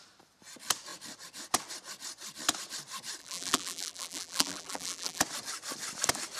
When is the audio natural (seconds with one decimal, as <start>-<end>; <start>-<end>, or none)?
0.0-3.2; 5.2-6.4

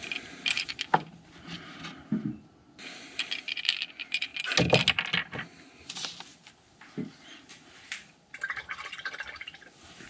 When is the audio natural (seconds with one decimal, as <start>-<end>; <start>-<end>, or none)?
2.2-2.7; 4.3-7.2